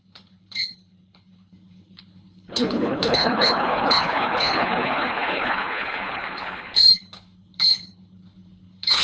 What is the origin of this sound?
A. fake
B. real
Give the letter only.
A